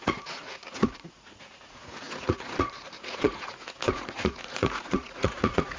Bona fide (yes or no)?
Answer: no